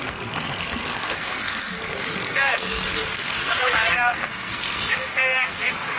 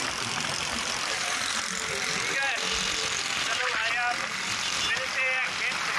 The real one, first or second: second